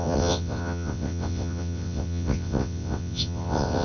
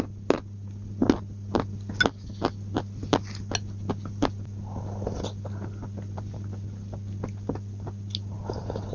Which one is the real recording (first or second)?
second